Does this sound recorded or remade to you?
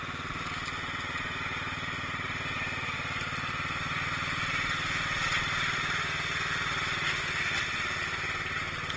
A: recorded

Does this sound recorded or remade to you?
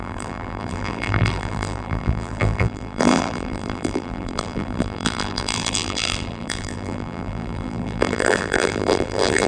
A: remade